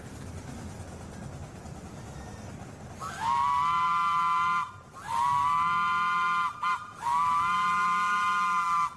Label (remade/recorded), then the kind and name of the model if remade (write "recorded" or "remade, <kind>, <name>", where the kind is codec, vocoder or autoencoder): recorded